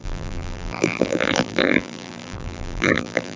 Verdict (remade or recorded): remade